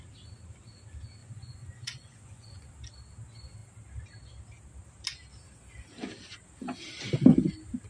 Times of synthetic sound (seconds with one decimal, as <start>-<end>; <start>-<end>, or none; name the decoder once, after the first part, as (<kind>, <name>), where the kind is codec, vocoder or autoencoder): 1.2-2.7 (vocoder, Vocos)